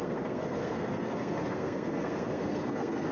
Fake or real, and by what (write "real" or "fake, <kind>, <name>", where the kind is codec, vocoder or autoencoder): fake, codec, SNAC